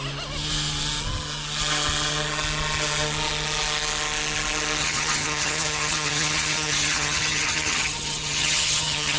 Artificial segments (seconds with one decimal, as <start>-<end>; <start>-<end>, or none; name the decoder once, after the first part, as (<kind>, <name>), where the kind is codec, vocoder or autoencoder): 4.8-9.2 (vocoder, HiFi-GAN)